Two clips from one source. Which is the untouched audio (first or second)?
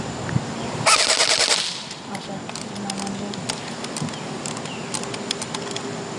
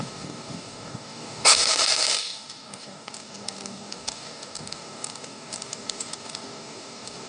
first